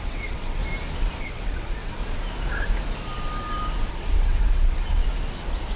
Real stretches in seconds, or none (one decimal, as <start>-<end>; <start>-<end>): 0.6-1.2; 2.0-3.9; 5.0-5.8